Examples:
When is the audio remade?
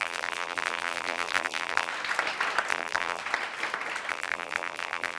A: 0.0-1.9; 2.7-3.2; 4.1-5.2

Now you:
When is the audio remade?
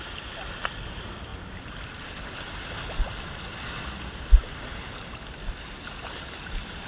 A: 0.0-1.3; 5.4-6.9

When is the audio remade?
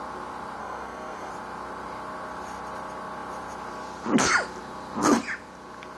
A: 0.6-1.3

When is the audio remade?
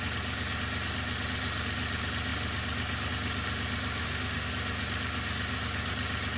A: 4.0-4.5